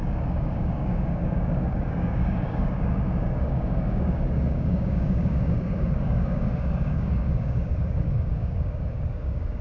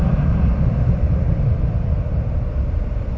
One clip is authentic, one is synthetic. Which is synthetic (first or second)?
first